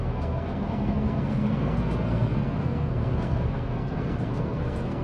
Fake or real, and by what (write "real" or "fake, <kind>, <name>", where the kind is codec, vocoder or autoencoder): fake, codec, SNAC